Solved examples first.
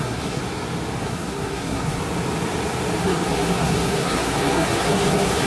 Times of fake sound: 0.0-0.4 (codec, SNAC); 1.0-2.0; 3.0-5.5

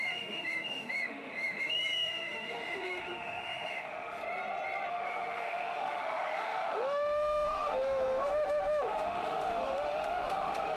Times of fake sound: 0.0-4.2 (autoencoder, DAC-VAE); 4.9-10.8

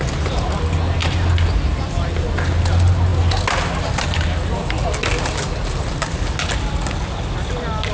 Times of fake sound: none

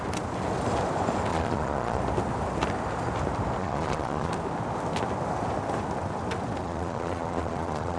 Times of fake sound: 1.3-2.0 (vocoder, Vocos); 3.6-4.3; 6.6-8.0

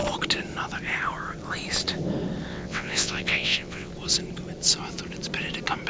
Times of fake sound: 2.5-3.9 (vocoder, WaveNeXt)